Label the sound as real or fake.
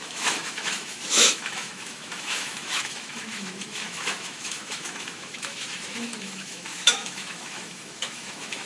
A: fake